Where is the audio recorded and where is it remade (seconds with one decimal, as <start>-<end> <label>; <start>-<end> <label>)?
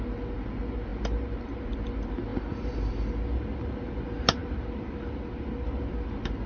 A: 0.0-2.3 recorded; 2.3-3.1 remade; 3.1-6.5 recorded